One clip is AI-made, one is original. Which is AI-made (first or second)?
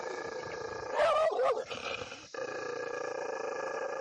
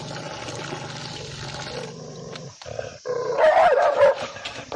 first